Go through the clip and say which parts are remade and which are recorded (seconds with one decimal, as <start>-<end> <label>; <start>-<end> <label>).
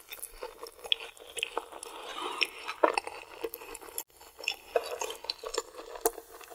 0.0-6.5 recorded